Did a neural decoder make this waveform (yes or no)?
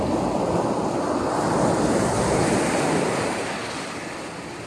no